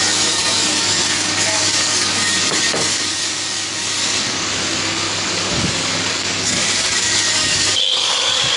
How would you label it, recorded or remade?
remade